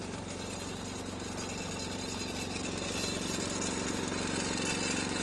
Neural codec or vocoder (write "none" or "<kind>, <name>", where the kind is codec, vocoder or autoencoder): none